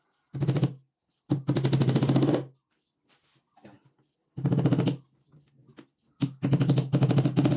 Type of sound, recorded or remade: recorded